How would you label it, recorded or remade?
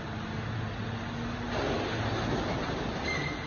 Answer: recorded